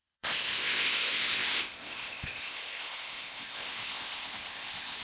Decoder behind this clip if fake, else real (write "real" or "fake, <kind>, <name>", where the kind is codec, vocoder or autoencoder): fake, codec, ZipCodec